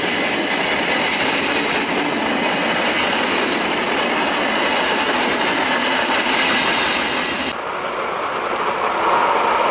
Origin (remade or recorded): recorded